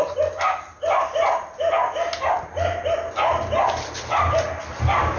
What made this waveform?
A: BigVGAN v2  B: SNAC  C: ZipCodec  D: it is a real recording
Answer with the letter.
D